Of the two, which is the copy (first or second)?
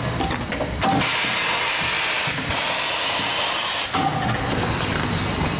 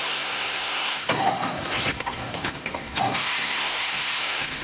second